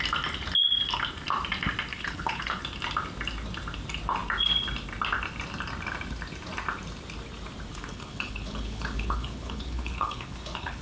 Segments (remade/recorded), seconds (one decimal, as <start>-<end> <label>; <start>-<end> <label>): 0.0-1.9 recorded; 1.9-2.6 remade; 2.6-7.7 recorded; 7.7-10.8 remade